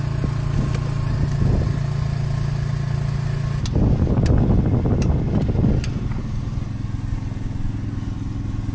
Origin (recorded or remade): recorded